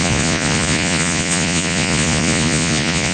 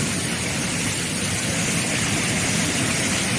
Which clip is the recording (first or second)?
second